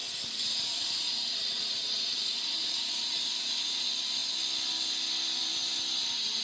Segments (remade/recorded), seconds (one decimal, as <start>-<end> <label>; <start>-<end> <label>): 0.0-3.8 remade; 3.8-6.4 recorded